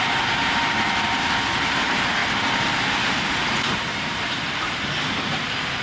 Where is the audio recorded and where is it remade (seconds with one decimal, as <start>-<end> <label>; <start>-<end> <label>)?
0.0-2.2 remade; 2.2-3.0 recorded; 3.0-5.8 remade